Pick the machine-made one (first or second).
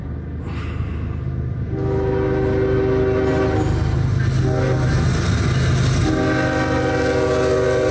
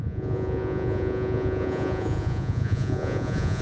second